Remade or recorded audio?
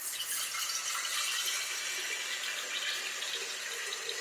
recorded